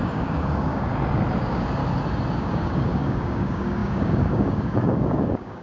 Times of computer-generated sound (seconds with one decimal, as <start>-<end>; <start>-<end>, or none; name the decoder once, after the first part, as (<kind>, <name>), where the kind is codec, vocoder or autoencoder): 0.0-0.9 (codec, DAC); 1.4-1.8; 2.3-5.6